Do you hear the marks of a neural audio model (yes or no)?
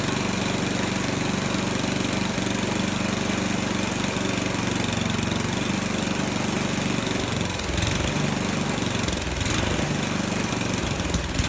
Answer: no